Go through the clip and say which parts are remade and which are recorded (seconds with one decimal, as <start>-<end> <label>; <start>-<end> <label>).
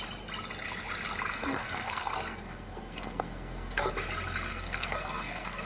0.0-1.3 recorded; 1.3-3.9 remade; 3.9-4.5 recorded; 4.5-5.7 remade